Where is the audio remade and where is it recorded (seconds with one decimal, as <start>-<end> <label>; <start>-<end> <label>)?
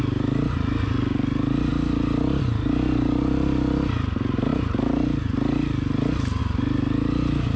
0.0-7.6 recorded